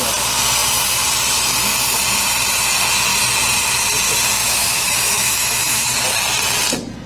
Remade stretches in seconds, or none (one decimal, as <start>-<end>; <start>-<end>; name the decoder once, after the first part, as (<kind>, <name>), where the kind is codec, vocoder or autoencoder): 4.4-6.1 (autoencoder, DAC-VAE)